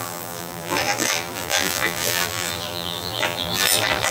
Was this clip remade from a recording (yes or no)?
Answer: yes